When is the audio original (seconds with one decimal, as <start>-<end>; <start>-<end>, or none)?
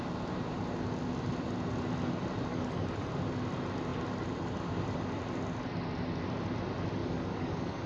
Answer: 0.0-2.5; 3.1-7.0